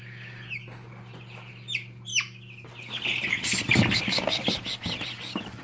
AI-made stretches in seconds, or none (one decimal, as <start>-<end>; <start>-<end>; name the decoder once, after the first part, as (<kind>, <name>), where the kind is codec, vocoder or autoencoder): none